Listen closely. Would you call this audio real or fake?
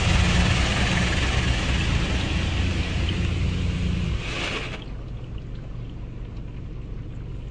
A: real